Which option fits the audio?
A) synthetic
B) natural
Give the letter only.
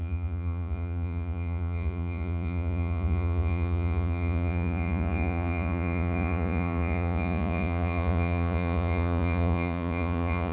A